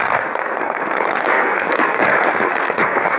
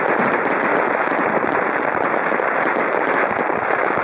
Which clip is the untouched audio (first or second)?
second